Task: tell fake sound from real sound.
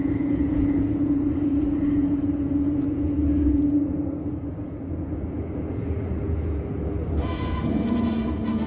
fake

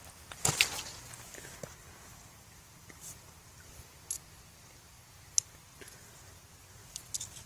real